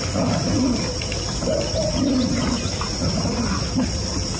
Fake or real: real